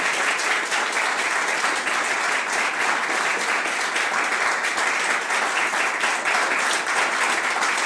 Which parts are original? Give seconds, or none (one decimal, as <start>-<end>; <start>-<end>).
0.0-2.2; 2.7-7.9